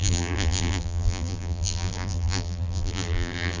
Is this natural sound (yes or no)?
no